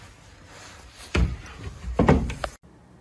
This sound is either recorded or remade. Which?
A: recorded